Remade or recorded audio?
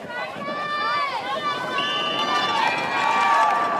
recorded